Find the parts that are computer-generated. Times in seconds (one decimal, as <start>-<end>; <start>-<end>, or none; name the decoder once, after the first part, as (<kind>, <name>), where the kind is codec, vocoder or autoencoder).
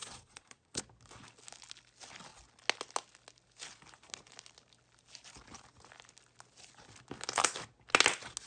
0.0-0.8 (vocoder, Vocos)